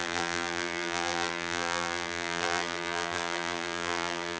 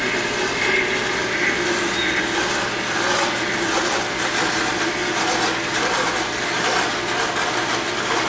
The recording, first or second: second